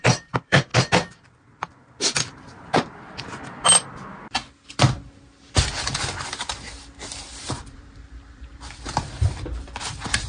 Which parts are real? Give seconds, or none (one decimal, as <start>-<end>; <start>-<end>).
0.7-5.5; 5.9-7.4